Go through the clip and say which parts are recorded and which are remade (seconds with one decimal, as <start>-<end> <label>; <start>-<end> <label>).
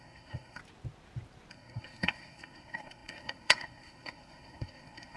0.0-0.6 remade; 0.6-1.5 recorded; 1.5-5.2 remade